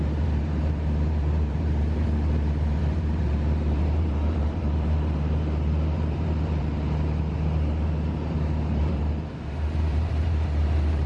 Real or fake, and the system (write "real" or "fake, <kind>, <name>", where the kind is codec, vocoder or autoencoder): fake, vocoder, BigVGAN v2